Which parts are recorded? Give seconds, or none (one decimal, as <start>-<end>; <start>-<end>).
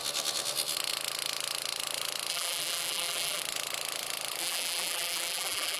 0.0-2.3; 3.4-4.4